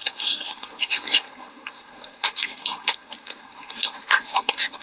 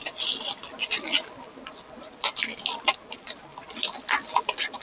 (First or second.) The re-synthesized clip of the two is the first